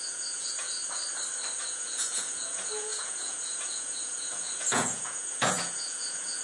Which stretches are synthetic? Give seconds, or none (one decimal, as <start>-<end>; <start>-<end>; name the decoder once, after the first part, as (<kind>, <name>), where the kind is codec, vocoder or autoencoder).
0.0-0.8 (vocoder, Vocos); 1.6-6.4